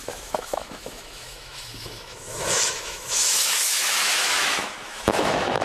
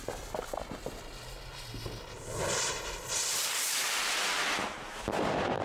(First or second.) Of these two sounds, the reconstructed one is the first